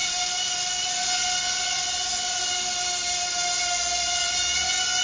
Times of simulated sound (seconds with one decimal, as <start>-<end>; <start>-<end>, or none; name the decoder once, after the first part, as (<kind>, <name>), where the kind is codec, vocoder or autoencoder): none